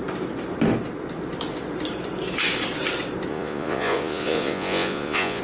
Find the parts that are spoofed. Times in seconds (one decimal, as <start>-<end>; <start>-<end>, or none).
3.3-5.4